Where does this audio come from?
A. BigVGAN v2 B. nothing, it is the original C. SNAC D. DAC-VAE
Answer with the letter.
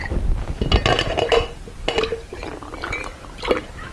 B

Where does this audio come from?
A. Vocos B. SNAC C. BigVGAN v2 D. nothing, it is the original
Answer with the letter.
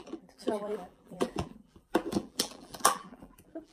C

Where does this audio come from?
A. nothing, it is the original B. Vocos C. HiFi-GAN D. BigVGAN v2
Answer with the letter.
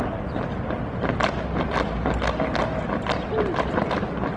A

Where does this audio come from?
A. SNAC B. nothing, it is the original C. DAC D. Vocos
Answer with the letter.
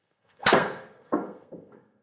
A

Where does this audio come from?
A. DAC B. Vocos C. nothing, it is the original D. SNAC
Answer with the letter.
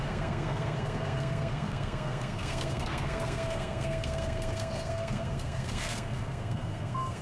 D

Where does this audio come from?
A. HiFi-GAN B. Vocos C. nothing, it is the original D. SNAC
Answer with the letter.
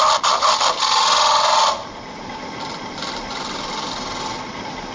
C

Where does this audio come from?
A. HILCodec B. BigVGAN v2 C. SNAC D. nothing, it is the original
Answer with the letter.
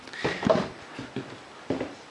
D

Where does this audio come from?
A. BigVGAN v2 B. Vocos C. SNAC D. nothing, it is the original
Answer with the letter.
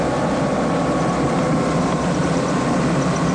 D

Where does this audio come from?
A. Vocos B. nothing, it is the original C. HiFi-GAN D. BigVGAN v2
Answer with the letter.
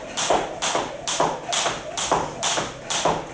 B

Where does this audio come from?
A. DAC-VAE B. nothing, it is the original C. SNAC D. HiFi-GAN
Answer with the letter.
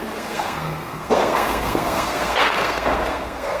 C